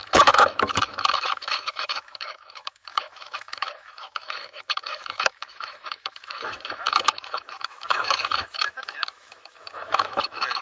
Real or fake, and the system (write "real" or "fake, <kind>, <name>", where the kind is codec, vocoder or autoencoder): fake, autoencoder, DAC-VAE